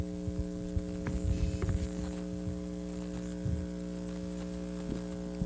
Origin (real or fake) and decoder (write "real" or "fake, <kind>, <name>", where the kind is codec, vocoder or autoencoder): real